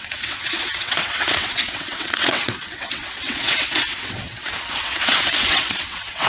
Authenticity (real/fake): fake